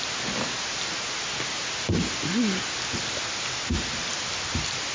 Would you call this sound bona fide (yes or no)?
yes